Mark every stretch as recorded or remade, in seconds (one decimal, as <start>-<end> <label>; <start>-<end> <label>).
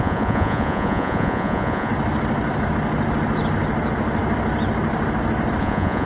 0.0-1.9 remade; 1.9-5.6 recorded; 5.6-6.1 remade